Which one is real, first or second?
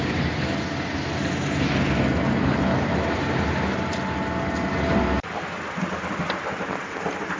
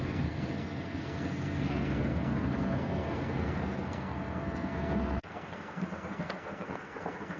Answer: first